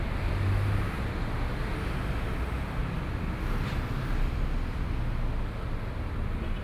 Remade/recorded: recorded